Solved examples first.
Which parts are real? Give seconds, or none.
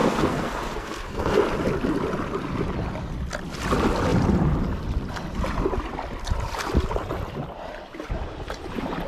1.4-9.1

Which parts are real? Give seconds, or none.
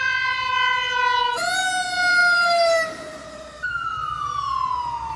0.0-5.2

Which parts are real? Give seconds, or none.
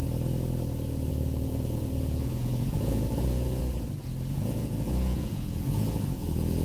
0.0-1.1; 3.6-4.3